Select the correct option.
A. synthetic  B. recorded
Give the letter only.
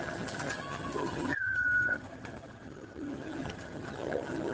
A